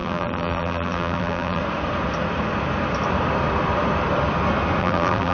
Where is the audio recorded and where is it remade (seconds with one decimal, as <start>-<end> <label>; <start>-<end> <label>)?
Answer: 0.0-1.6 remade; 1.6-4.8 recorded; 4.8-5.3 remade